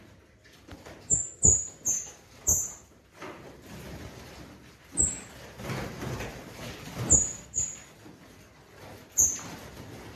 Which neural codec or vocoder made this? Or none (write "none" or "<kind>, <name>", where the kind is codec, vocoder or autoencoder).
vocoder, BigVGAN v2